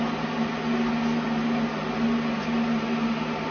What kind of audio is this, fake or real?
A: real